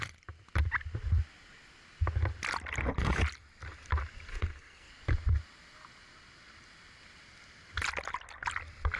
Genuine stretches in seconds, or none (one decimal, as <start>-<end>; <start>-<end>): 0.0-4.3; 4.9-9.0